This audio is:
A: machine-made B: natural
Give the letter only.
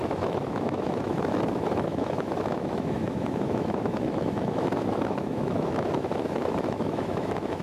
A